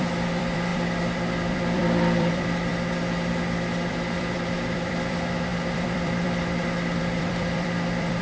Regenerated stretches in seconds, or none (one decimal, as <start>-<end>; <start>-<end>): 0.0-2.7; 3.9-8.2